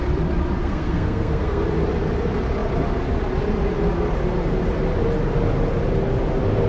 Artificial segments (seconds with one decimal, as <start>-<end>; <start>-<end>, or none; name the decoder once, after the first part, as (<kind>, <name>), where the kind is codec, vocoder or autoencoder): 0.6-1.6 (codec, SNAC)